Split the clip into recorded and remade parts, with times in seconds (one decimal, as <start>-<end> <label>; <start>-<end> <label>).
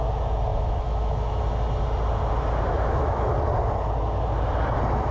0.0-0.5 recorded; 0.5-1.4 remade; 1.4-2.7 recorded; 2.7-3.3 remade; 3.3-5.1 recorded